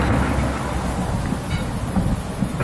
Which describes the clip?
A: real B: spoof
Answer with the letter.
A